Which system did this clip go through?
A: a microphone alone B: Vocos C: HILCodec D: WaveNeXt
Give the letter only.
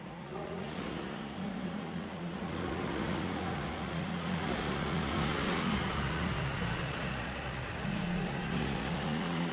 B